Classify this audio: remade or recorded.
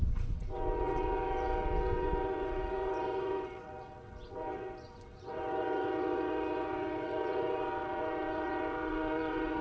remade